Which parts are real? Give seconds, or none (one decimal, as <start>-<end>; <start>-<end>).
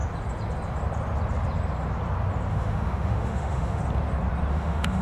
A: 0.0-2.5; 3.8-4.5